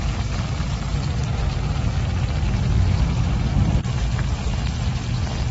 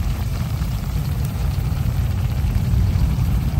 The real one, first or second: first